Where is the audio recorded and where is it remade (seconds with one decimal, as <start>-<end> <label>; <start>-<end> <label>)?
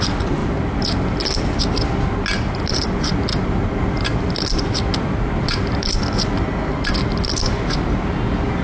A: 0.0-8.6 recorded